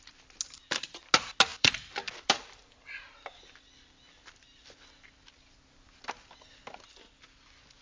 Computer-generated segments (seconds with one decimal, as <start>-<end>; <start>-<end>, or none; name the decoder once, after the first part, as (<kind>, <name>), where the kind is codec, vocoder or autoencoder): 1.5-4.6 (vocoder, BigVGAN v2)